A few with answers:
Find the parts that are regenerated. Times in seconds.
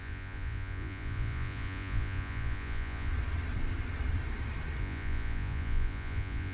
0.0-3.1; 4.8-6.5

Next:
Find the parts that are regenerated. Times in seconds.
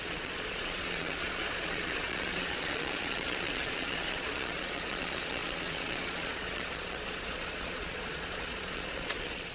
0.0-9.5